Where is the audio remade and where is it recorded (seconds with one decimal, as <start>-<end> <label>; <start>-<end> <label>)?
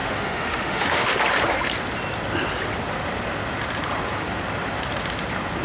0.0-1.2 remade; 1.2-5.6 recorded